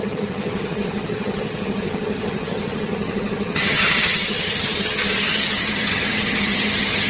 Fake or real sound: fake